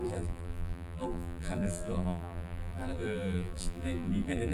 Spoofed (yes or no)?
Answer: yes